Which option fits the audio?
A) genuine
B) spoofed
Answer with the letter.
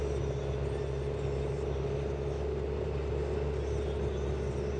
A